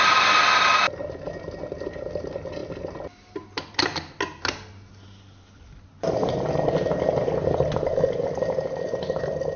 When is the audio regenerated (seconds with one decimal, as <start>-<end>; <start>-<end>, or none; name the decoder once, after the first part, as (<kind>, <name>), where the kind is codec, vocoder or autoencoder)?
none